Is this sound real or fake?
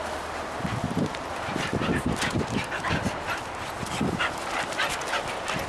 real